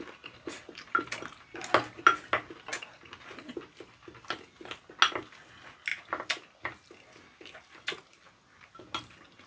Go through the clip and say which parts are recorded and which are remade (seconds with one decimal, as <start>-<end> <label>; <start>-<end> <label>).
0.0-9.5 recorded